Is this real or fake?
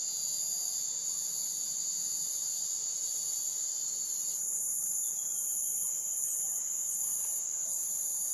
real